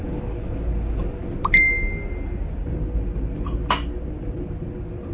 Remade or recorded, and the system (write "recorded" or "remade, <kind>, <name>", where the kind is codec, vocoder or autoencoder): recorded